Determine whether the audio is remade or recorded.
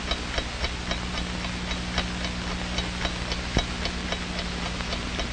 recorded